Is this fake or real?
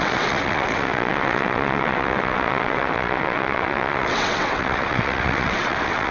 fake